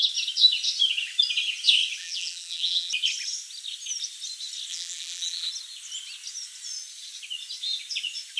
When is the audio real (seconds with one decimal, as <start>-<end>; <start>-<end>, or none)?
0.0-2.0; 2.9-4.7; 5.5-8.4